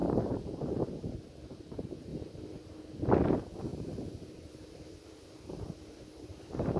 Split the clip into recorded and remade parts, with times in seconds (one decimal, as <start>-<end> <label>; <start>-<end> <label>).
0.0-1.5 recorded; 1.5-2.1 remade; 2.1-3.0 recorded; 3.0-6.8 remade